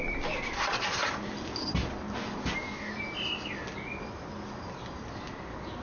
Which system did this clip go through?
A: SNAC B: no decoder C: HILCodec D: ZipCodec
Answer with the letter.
B